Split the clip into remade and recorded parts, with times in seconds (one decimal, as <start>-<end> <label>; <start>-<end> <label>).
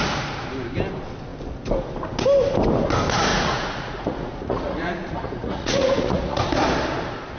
0.0-3.3 recorded; 3.3-6.4 remade; 6.4-7.4 recorded